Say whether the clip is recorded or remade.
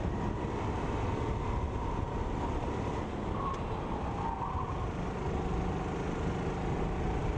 recorded